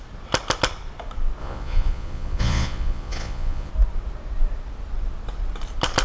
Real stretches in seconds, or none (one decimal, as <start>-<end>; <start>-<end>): 0.0-1.4; 3.7-6.0